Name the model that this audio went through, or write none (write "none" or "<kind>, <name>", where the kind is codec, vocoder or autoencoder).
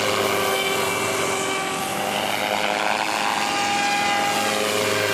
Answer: none